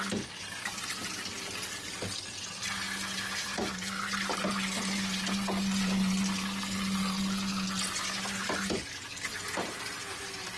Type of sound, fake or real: real